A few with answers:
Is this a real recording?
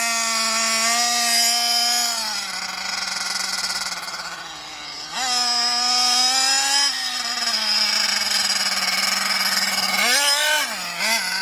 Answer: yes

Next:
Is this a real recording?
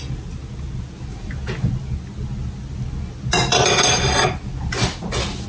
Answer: yes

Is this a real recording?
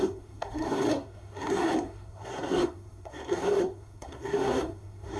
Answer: no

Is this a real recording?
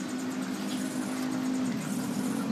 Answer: yes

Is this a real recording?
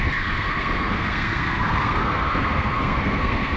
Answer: no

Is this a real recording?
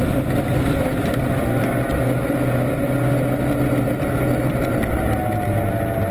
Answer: yes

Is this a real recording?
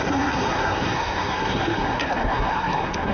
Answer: no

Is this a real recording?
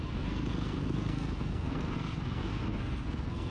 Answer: no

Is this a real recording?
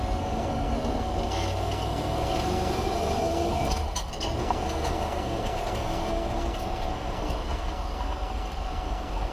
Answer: no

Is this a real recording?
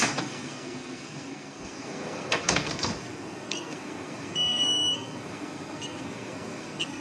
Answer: no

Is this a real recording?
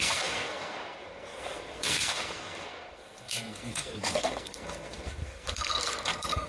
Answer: no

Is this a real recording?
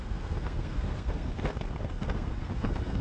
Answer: no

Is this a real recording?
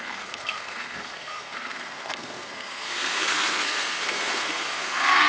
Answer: no